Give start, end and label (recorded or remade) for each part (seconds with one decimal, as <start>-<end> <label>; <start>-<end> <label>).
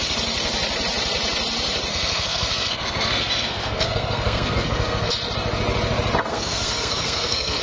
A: 0.0-1.9 recorded; 1.9-5.1 remade; 5.1-6.3 recorded; 6.3-7.6 remade